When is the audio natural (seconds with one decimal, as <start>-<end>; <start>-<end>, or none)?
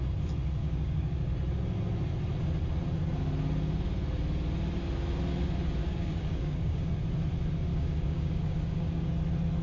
0.0-0.6; 1.3-5.8; 6.9-7.7; 9.1-9.6